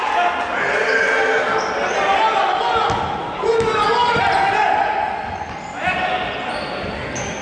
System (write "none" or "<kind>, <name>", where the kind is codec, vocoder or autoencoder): none